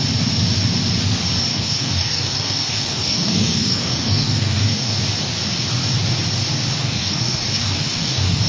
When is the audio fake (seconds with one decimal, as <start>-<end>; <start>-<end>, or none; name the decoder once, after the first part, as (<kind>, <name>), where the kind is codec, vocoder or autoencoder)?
1.5-5.0 (codec, DAC); 6.8-8.5